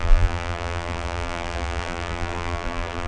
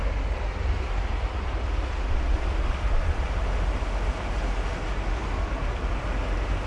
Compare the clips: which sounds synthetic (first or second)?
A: first